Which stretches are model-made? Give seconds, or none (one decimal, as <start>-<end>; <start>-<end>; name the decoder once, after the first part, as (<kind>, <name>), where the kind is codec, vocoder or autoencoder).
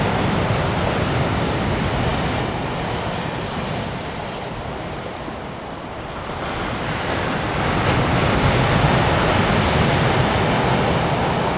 none